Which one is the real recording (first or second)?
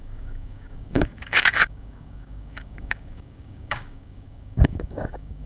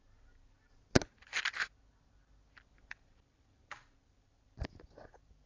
second